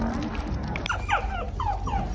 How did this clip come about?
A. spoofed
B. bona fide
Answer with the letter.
B